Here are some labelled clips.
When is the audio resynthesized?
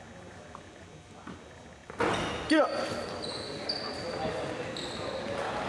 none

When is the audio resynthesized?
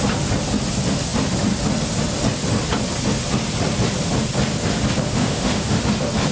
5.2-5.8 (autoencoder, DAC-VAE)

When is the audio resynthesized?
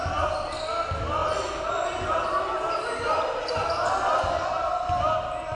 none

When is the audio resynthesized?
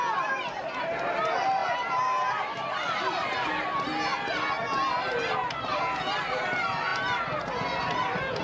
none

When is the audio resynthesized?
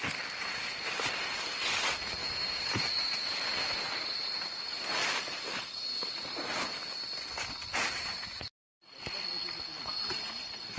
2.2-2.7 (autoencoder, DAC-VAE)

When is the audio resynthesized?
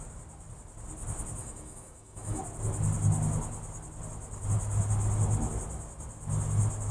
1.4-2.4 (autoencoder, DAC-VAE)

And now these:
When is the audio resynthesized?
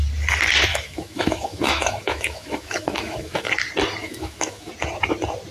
0.7-3.5 (autoencoder, DAC-VAE); 4.0-4.7